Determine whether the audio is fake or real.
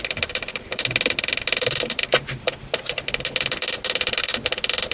real